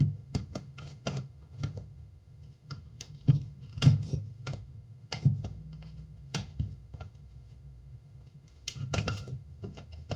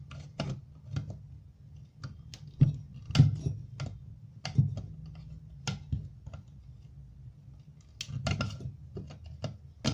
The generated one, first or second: first